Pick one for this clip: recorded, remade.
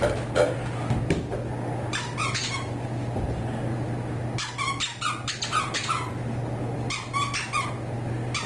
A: recorded